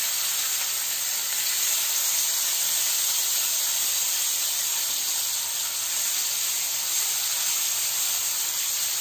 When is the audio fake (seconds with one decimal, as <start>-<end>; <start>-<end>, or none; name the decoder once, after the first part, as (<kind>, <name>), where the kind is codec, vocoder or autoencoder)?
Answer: none